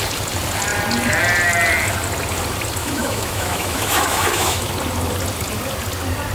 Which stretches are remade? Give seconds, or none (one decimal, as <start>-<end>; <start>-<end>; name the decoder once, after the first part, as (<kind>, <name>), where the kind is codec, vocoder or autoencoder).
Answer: 2.8-4.7 (autoencoder, DAC-VAE)